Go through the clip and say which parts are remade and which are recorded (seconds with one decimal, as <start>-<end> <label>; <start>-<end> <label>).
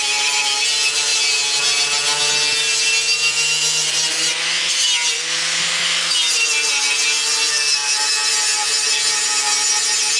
0.0-10.2 recorded